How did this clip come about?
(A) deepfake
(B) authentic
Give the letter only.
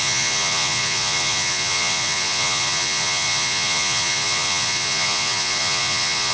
A